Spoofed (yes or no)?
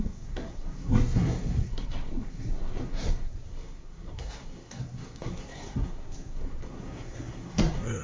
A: yes